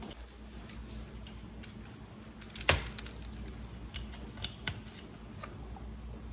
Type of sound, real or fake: real